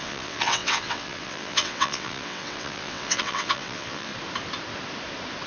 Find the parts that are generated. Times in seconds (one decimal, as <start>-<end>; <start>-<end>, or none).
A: 0.0-4.1